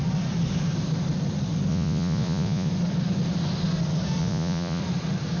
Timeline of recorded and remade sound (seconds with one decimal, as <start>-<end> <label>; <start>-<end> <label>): 0.0-1.7 recorded; 1.7-2.7 remade; 2.7-4.2 recorded; 4.2-4.8 remade; 4.8-5.4 recorded